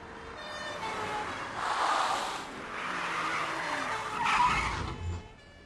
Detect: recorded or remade remade